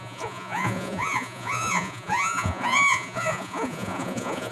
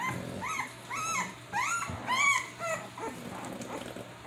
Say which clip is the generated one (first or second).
first